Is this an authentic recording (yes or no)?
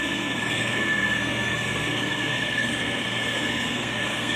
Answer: no